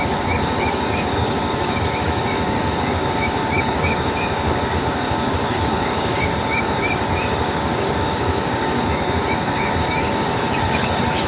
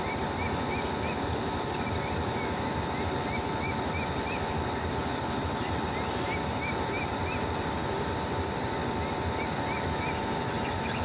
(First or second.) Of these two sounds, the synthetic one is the first